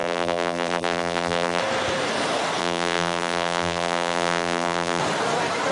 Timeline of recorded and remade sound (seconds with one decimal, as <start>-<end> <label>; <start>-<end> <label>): 0.0-1.6 remade; 1.6-2.6 recorded; 2.6-5.0 remade; 5.0-5.7 recorded